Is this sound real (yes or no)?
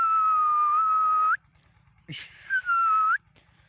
yes